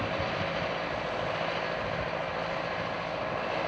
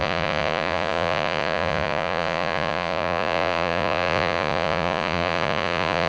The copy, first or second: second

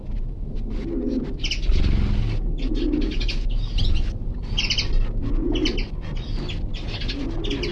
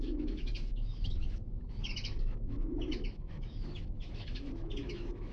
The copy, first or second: second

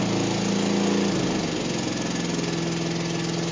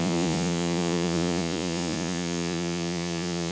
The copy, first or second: second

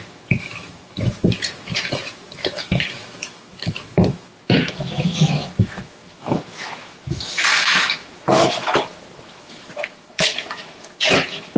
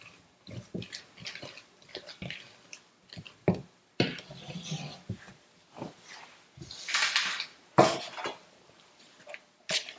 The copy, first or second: first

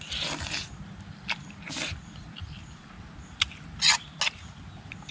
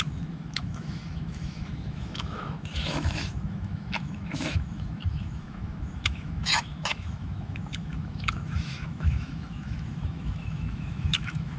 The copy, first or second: second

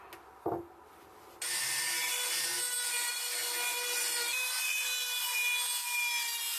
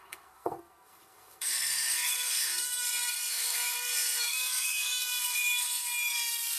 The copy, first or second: second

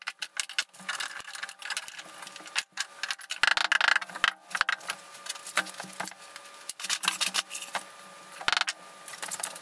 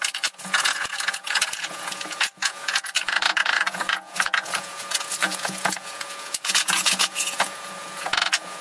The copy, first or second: second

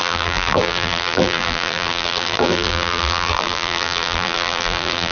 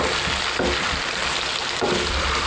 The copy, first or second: first